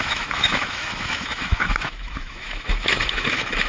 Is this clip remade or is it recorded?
remade